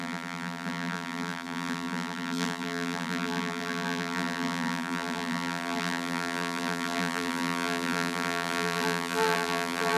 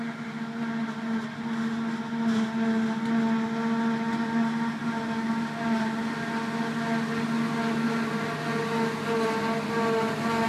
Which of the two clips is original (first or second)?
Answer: second